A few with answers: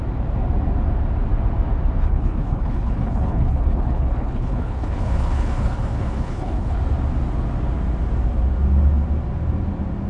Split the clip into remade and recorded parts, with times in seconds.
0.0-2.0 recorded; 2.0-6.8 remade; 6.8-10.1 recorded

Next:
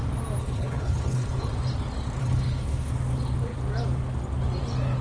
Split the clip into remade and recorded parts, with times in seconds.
0.0-0.4 recorded; 0.4-1.5 remade; 1.5-2.2 recorded; 2.2-2.9 remade; 2.9-5.0 recorded

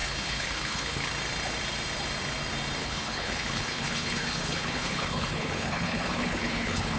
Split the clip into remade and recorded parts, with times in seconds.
0.0-1.1 remade; 1.1-2.8 recorded; 2.8-7.0 remade

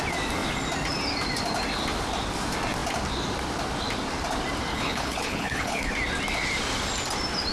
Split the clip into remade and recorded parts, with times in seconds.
0.0-4.7 recorded; 4.7-5.9 remade; 5.9-7.5 recorded

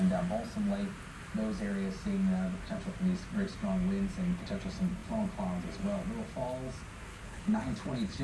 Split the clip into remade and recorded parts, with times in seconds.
0.0-7.1 recorded; 7.1-8.2 remade

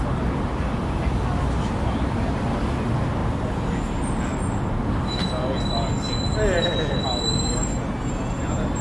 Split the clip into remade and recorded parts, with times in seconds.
0.0-8.8 recorded

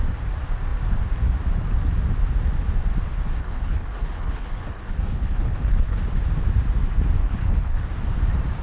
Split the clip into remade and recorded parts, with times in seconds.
0.0-3.4 recorded; 3.4-6.0 remade; 6.0-7.2 recorded; 7.2-7.8 remade; 7.8-8.6 recorded

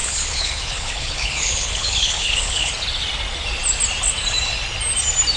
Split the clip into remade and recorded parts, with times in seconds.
0.0-2.7 remade; 2.7-5.4 recorded